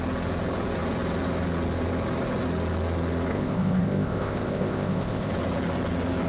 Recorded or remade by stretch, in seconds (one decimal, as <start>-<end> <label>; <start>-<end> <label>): 0.0-3.3 recorded; 3.3-5.3 remade; 5.3-6.3 recorded